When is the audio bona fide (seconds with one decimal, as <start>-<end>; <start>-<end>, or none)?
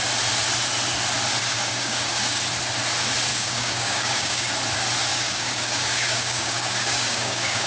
0.0-1.4; 2.4-3.3; 4.5-5.1